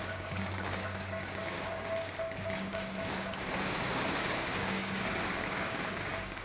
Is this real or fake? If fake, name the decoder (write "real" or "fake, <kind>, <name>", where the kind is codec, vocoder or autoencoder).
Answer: fake, codec, DAC